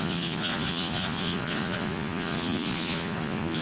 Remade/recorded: remade